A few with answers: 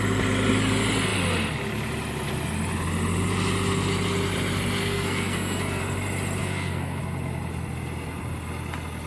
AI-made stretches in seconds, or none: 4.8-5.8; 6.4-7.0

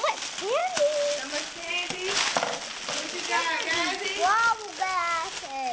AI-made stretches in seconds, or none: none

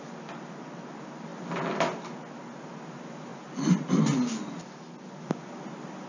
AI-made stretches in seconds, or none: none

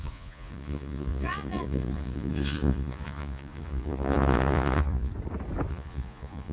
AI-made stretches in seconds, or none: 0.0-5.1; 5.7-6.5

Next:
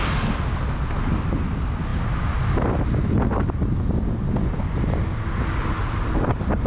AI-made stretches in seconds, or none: none

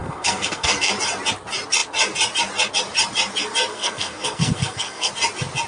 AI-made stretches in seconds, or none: 0.0-0.9; 3.7-5.1

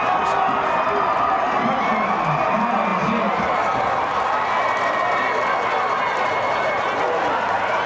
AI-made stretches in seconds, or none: none